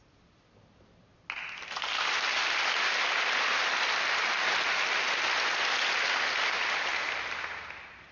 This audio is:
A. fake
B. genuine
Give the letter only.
B